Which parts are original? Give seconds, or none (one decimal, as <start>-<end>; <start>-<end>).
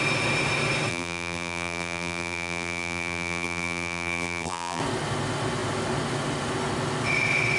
0.0-0.9; 4.8-7.6